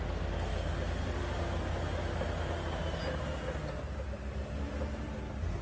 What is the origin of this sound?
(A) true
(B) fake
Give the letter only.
A